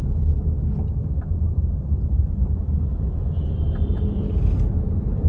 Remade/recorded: remade